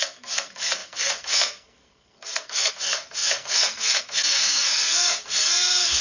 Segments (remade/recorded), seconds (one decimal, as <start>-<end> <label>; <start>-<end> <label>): 0.0-6.0 remade